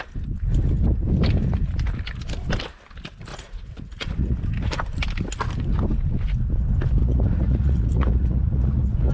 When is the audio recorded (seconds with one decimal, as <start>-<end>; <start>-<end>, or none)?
0.0-3.3; 4.4-7.0